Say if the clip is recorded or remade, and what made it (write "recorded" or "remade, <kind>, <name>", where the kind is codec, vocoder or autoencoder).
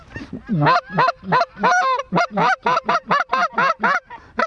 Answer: recorded